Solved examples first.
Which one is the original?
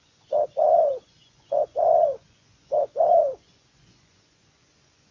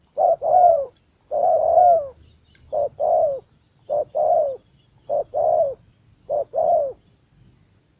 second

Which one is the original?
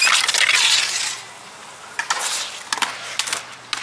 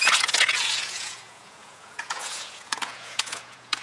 first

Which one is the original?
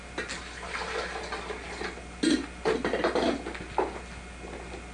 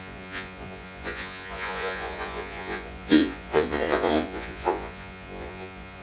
first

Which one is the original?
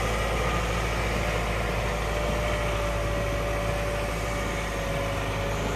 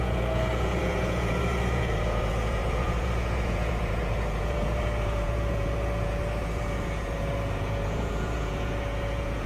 first